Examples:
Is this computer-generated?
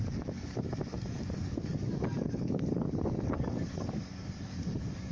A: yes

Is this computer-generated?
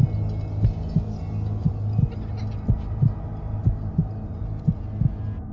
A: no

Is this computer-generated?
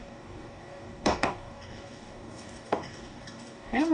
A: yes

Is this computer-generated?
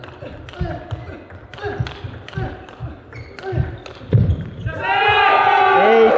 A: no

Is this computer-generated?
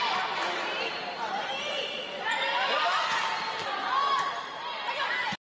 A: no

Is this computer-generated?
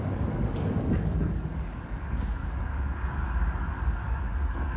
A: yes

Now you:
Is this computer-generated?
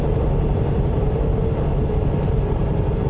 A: no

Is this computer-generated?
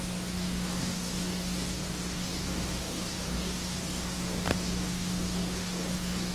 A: yes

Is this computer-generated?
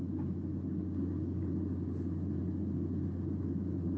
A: no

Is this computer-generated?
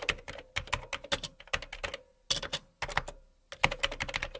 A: no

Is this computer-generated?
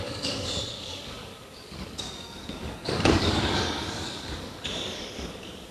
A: yes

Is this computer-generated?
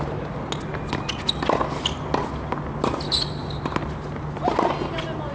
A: no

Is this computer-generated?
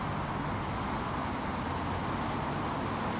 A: no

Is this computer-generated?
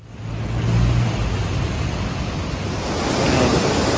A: no